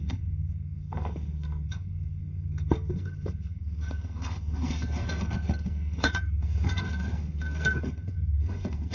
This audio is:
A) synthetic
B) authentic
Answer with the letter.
A